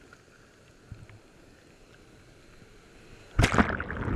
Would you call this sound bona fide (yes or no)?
yes